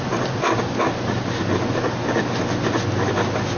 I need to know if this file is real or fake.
real